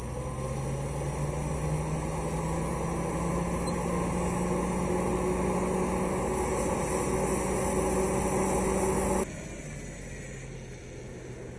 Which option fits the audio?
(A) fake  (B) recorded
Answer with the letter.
B